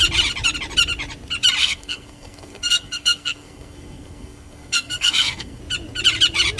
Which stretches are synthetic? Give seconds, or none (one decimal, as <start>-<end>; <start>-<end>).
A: 1.6-5.6